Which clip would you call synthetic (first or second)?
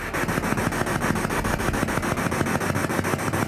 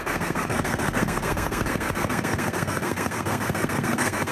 second